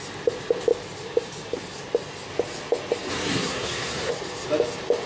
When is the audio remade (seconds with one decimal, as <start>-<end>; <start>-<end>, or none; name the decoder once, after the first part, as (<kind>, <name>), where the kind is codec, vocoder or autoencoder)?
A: 3.1-4.1 (codec, SNAC)